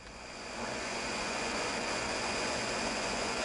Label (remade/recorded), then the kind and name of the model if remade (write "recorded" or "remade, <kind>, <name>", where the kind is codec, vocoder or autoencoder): remade, vocoder, Vocos